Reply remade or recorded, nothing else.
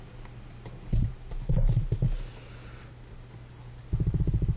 recorded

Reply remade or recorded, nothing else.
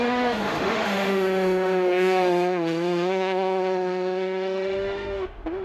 remade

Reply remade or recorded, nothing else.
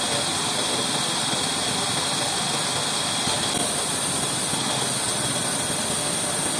recorded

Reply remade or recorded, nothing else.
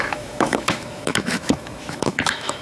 remade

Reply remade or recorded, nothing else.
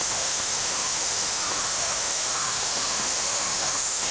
remade